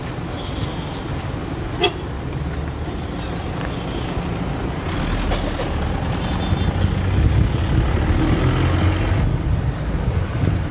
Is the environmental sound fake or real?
real